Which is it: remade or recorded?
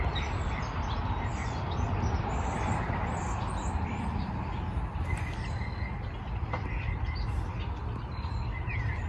recorded